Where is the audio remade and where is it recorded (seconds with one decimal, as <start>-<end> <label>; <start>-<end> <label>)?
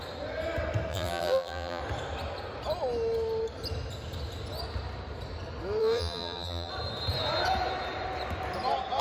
0.0-0.9 recorded; 0.9-1.8 remade; 1.8-5.8 recorded; 5.8-6.7 remade; 6.7-9.0 recorded